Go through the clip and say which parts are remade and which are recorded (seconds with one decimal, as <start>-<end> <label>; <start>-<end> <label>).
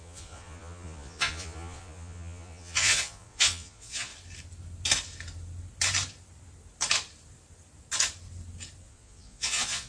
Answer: 0.0-4.1 remade; 4.1-8.8 recorded; 8.8-9.9 remade